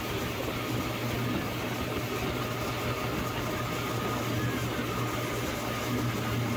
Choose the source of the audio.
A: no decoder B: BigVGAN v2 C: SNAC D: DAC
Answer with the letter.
A